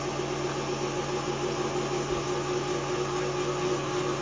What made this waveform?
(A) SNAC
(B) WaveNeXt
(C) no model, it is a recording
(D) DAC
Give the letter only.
C